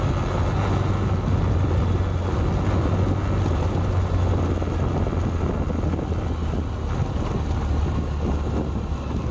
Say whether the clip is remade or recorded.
recorded